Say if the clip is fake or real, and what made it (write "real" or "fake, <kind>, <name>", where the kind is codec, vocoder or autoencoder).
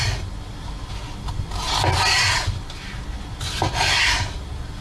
real